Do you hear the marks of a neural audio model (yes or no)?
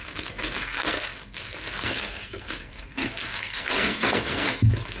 yes